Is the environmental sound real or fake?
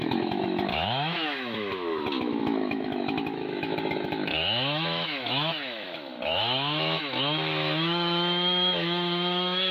fake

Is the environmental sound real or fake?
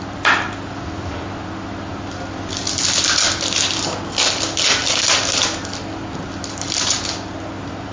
real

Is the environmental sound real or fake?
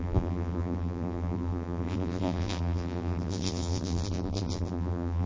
fake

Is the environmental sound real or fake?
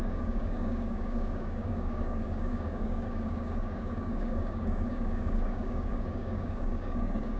fake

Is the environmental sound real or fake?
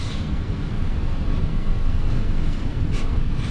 fake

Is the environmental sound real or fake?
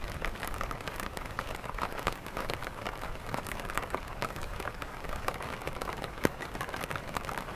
fake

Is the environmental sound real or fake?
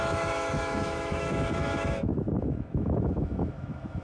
fake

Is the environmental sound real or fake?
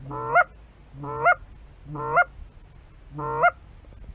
real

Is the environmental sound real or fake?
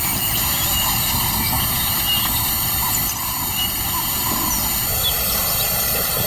real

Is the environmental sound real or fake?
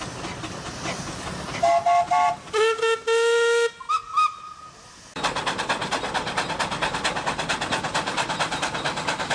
real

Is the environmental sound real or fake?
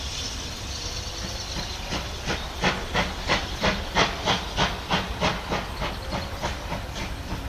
real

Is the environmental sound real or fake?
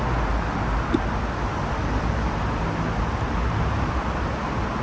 real